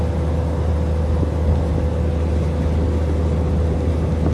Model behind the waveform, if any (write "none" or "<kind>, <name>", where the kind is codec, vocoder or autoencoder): none